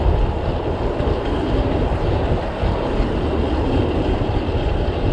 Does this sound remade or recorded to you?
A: recorded